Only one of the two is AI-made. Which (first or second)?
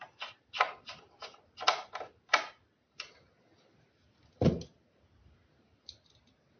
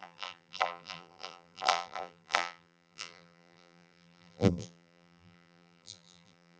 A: second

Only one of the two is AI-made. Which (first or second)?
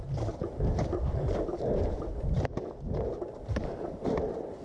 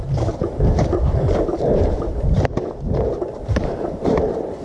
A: second